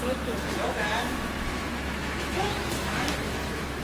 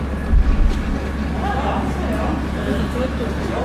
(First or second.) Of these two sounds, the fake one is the first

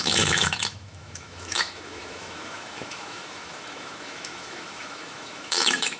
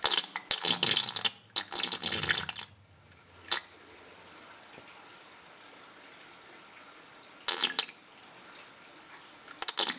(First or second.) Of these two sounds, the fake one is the first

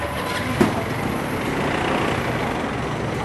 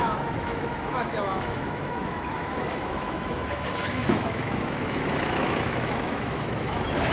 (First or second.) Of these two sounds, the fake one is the second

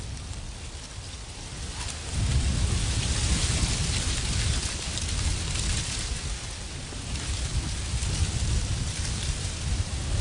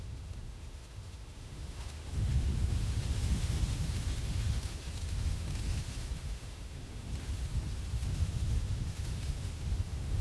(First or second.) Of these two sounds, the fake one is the second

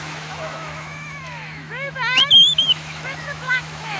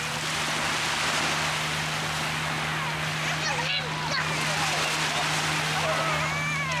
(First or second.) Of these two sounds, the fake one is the first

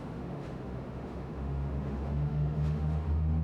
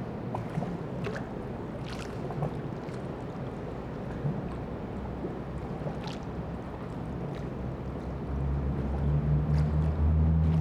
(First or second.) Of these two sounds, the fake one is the first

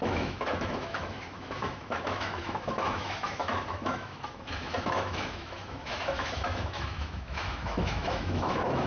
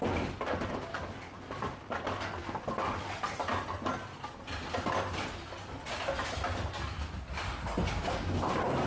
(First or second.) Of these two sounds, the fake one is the first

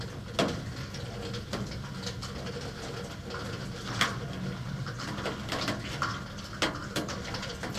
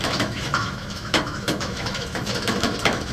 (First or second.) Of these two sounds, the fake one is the second